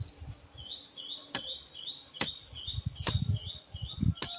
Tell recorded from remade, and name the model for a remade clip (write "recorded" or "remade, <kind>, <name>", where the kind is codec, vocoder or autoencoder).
recorded